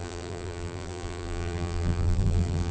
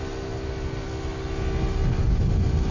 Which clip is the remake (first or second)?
first